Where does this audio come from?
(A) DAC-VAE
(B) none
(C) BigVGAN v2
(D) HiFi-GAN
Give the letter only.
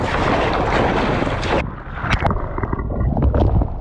B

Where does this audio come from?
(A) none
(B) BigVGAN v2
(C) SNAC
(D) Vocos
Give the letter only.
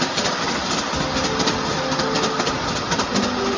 A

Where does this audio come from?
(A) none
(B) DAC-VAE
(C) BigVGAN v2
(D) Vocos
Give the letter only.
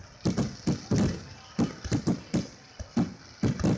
A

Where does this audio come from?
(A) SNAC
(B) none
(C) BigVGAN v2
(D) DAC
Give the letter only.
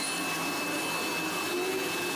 B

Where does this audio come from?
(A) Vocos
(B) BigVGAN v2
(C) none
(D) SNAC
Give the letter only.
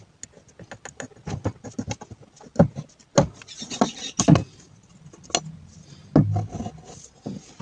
C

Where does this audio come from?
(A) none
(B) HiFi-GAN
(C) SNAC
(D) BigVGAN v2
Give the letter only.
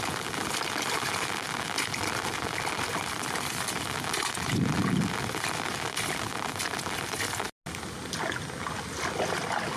A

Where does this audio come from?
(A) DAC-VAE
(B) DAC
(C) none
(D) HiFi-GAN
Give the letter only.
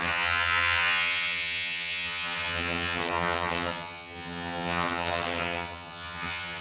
D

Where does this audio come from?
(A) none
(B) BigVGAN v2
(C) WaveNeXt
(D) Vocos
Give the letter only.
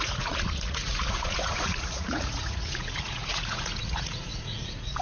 D